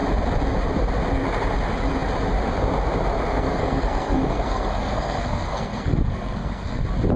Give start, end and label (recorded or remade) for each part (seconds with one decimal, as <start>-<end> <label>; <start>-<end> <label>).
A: 0.0-3.3 recorded; 3.3-6.8 remade; 6.8-7.2 recorded